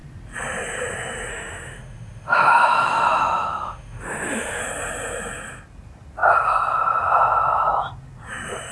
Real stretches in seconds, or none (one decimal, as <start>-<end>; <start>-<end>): 0.0-1.3; 4.6-8.7